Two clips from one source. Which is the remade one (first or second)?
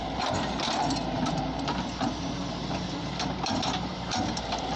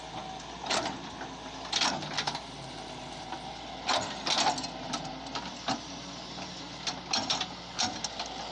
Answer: first